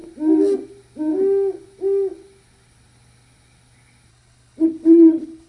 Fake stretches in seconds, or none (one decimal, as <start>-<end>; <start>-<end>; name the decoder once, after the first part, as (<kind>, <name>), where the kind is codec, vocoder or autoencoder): 4.1-5.5 (codec, HILCodec)